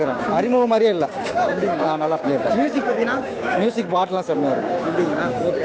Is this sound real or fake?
fake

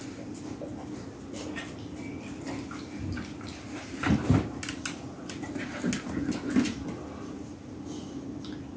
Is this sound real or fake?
real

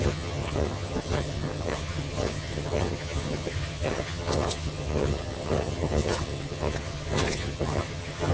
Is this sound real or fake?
fake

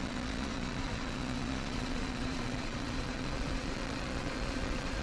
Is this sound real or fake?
fake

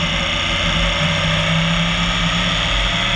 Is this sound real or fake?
real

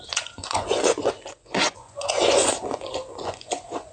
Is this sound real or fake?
fake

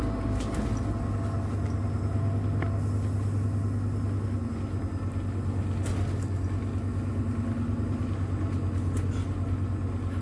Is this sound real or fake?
real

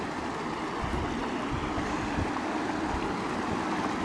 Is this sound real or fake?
real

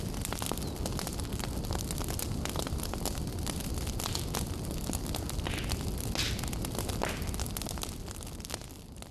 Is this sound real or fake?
real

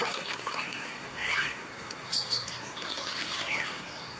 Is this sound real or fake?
fake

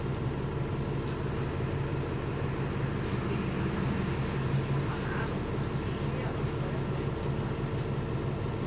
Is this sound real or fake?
real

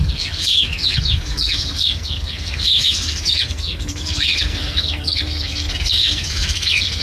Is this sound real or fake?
fake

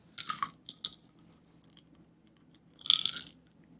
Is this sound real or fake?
real